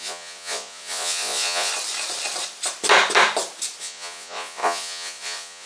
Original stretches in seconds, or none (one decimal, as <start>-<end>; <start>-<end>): 1.7-3.8